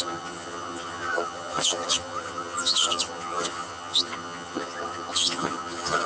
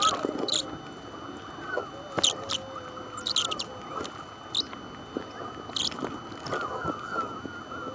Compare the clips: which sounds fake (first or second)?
first